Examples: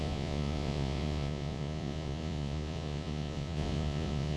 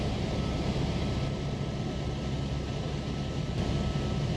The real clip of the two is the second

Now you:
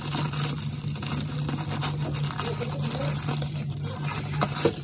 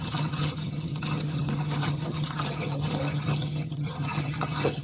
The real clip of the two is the first